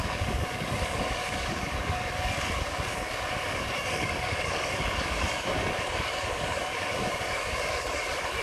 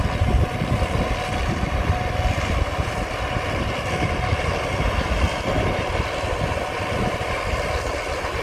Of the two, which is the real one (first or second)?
second